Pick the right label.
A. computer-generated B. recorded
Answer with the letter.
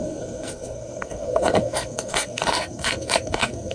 A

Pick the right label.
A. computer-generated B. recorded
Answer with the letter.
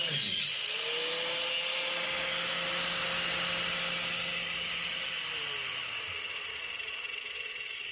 B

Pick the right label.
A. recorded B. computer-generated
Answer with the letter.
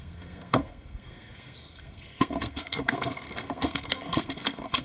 B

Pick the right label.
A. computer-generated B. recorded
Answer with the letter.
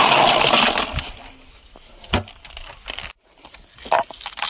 B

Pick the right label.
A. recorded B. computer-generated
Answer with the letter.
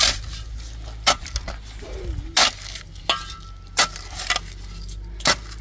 A